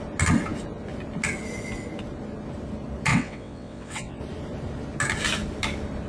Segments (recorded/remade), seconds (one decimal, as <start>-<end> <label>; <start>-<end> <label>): 0.0-3.1 recorded; 3.1-4.2 remade; 4.2-6.1 recorded